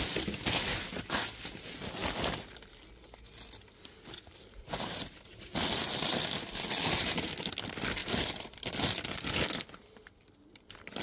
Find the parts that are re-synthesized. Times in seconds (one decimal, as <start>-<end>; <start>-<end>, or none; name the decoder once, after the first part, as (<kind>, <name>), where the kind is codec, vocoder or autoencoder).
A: none